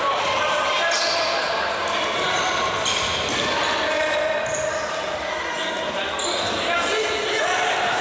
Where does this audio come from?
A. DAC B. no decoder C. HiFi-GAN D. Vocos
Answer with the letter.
B